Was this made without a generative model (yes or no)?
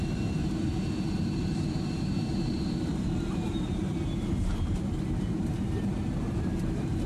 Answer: no